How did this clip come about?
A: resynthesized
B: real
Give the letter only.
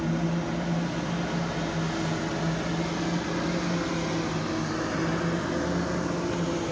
B